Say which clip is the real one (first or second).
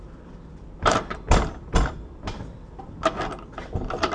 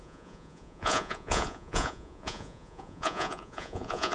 first